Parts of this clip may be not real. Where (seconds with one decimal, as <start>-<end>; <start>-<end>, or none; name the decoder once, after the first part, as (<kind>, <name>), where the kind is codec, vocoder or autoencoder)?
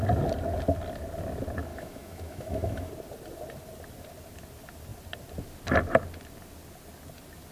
1.7-2.9 (autoencoder, DAC-VAE)